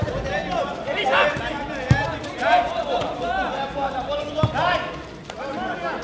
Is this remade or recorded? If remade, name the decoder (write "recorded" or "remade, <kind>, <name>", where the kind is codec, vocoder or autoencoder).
recorded